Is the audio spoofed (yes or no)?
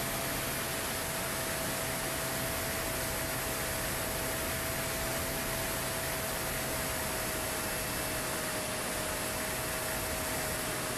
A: no